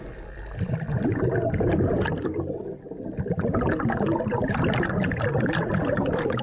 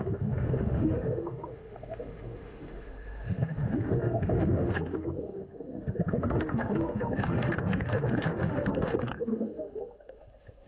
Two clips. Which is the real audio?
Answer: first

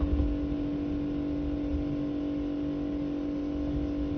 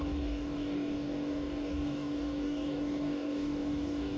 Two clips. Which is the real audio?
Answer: first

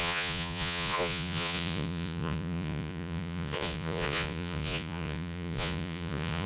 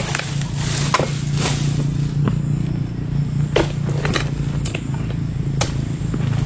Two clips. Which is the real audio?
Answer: second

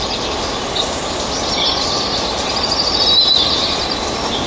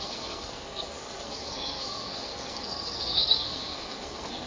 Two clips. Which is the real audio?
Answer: first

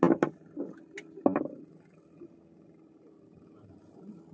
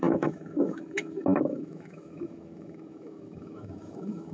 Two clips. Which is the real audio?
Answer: first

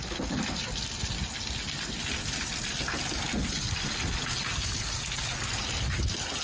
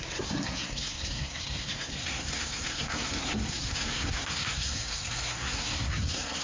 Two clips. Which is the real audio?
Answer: first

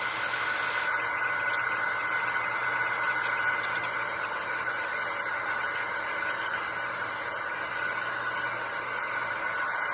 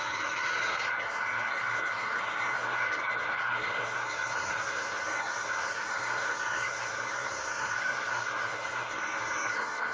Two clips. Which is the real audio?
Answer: first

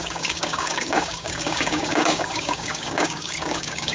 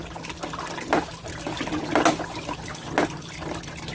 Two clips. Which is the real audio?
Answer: second